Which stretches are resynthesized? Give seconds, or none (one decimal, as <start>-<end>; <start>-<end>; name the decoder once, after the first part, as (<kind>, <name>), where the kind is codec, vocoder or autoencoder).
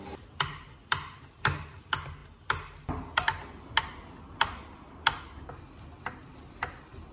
none